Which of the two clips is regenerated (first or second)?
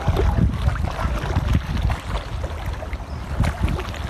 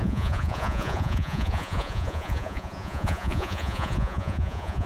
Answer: second